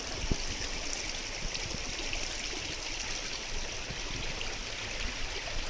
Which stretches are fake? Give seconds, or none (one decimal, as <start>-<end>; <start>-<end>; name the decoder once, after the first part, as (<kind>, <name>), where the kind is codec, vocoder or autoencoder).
none